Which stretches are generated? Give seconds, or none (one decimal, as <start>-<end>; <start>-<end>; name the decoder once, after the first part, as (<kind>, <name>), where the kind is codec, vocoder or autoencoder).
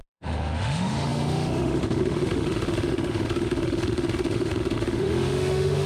0.0-5.9 (autoencoder, DAC-VAE)